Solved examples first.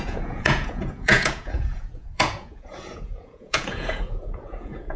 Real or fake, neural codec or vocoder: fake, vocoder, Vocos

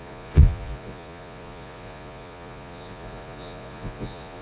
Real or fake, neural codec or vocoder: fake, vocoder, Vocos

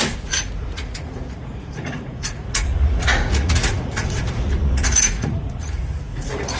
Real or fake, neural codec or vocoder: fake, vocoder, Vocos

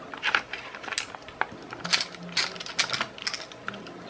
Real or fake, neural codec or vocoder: real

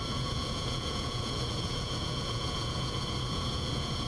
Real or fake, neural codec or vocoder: fake, vocoder, Vocos